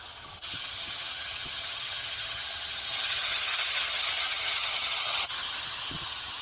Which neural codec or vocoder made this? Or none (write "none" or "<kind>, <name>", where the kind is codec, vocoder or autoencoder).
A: vocoder, HiFi-GAN